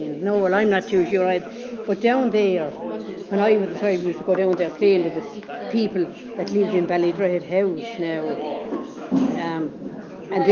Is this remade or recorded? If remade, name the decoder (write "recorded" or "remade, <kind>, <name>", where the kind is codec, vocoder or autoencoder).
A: remade, autoencoder, DAC-VAE